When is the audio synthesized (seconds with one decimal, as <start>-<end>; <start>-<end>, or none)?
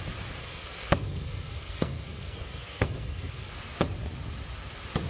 0.4-3.5